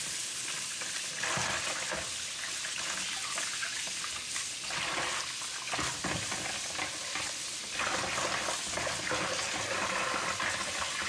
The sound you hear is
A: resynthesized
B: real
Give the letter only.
B